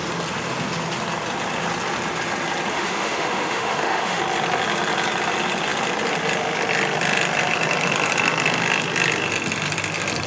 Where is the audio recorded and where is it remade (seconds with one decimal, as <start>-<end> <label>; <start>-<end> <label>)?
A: 0.0-2.7 recorded; 2.7-4.2 remade; 4.2-10.3 recorded